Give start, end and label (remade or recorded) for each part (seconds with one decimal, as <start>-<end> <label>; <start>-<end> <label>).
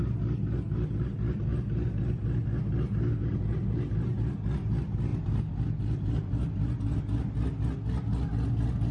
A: 0.0-8.9 recorded